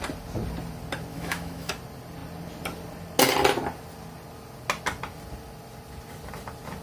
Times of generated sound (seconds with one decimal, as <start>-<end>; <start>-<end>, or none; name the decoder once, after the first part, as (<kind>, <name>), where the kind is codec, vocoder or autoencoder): 1.1-1.7 (autoencoder, DAC-VAE)